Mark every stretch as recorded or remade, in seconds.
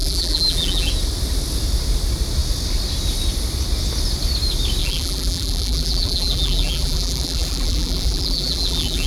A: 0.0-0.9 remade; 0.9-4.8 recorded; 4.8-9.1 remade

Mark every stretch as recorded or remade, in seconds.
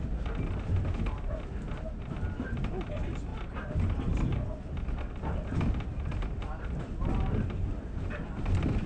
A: 0.0-8.9 recorded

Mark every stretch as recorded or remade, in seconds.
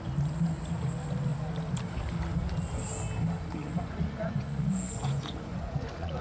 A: 0.0-3.6 recorded; 3.6-6.2 remade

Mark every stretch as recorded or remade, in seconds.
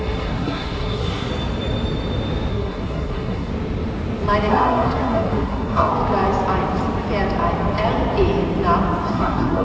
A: 0.0-1.3 remade; 1.3-2.5 recorded; 2.5-3.5 remade; 3.5-4.5 recorded; 4.5-5.9 remade; 5.9-9.1 recorded; 9.1-9.6 remade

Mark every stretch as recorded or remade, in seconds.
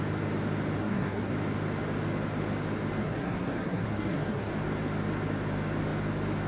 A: 0.0-0.8 recorded; 0.8-1.3 remade; 1.3-3.0 recorded; 3.0-4.5 remade; 4.5-6.5 recorded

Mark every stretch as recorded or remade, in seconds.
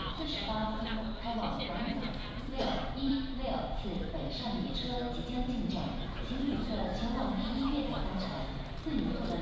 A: 0.0-4.6 remade; 4.6-6.2 recorded; 6.2-6.8 remade; 6.8-9.4 recorded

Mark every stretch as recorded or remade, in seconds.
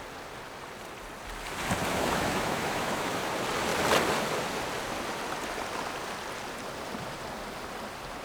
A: 0.0-1.8 recorded; 1.8-3.3 remade; 3.3-8.2 recorded